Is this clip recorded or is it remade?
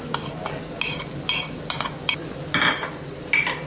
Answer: recorded